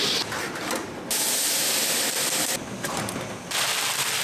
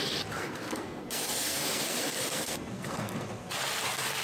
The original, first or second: first